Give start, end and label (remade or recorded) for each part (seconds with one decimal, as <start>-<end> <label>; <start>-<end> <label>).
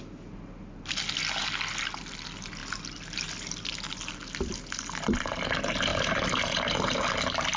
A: 0.0-7.6 recorded